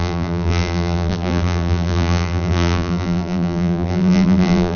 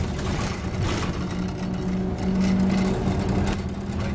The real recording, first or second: second